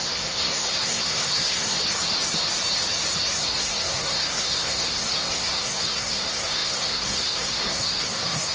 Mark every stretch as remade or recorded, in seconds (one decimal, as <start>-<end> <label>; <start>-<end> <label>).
0.0-1.8 remade; 1.8-3.4 recorded; 3.4-8.5 remade